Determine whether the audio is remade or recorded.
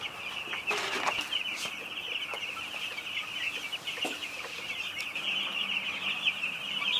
recorded